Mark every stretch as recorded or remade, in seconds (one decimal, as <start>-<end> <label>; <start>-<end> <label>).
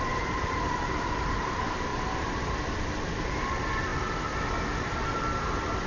0.0-3.9 remade; 3.9-5.9 recorded